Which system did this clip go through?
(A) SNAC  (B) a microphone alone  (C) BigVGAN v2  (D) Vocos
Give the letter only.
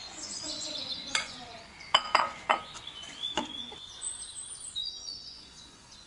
D